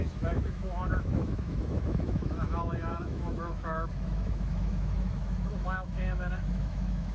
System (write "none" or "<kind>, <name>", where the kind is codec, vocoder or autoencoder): autoencoder, DAC-VAE